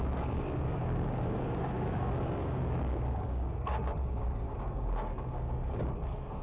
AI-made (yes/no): yes